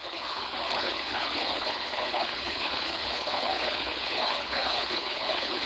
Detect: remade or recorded remade